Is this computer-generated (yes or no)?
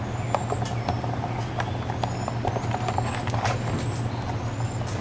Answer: no